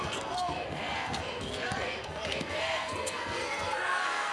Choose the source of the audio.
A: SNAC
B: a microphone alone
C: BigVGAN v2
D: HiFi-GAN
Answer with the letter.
A